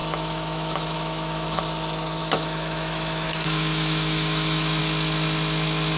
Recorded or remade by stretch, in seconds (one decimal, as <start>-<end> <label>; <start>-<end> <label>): 0.0-1.6 remade; 1.6-2.2 recorded; 2.2-4.8 remade; 4.8-6.0 recorded